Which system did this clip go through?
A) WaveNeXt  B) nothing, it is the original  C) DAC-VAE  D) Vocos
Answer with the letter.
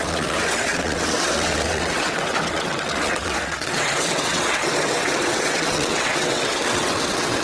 A